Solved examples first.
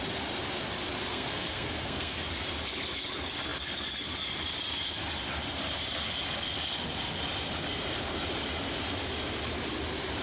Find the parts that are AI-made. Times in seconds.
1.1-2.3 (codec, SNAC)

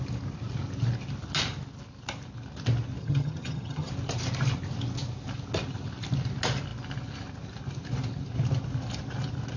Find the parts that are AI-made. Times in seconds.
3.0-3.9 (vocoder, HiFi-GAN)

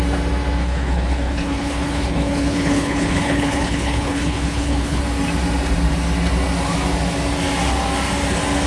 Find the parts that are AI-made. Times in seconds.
0.6-5.0 (codec, HILCodec)

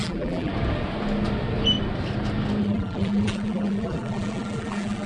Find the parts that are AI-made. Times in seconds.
0.0-0.5 (vocoder, BigVGAN v2); 2.6-5.1

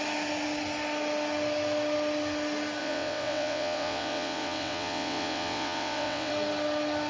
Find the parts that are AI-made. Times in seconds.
2.8-6.3 (vocoder, WaveNeXt)